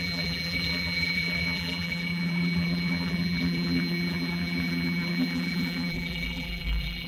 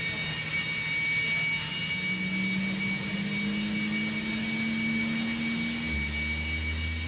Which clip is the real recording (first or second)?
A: second